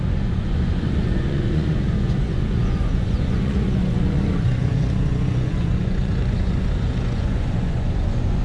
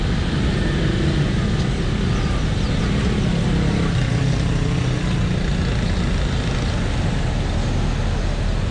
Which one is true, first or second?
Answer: second